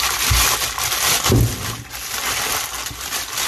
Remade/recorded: recorded